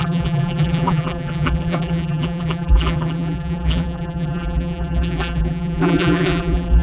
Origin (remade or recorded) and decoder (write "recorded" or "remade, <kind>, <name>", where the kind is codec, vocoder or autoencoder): remade, vocoder, BigVGAN v2